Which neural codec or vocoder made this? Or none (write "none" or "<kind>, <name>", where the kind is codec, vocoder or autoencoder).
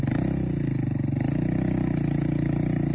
none